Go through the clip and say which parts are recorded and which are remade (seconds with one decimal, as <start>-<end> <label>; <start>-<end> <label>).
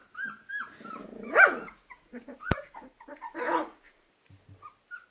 0.0-1.0 recorded; 1.0-4.1 remade; 4.1-5.1 recorded